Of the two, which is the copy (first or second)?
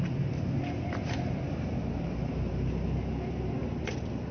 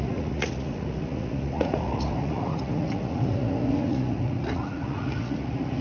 second